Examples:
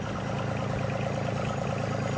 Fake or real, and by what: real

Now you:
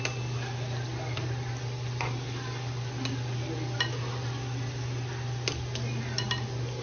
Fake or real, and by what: real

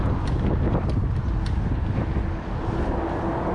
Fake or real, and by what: real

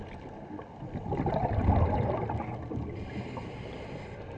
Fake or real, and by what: real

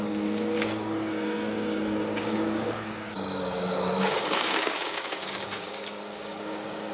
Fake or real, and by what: fake, codec, DAC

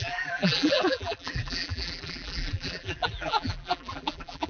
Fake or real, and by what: fake, vocoder, BigVGAN v2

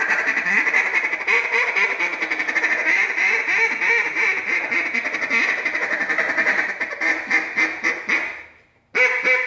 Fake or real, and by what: real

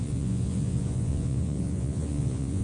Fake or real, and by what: fake, vocoder, Vocos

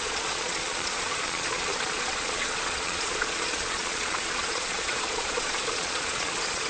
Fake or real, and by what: fake, vocoder, Vocos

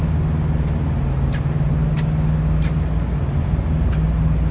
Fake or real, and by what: real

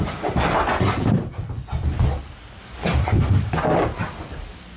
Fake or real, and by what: real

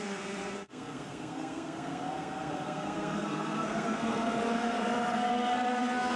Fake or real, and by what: fake, codec, SNAC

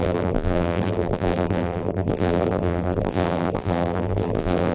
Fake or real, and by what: fake, vocoder, BigVGAN v2